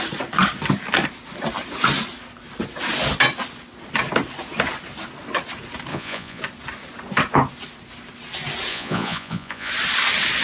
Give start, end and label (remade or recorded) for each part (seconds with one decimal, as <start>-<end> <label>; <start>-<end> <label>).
0.0-5.9 recorded; 5.9-6.4 remade; 6.4-8.7 recorded; 8.7-9.7 remade; 9.7-10.4 recorded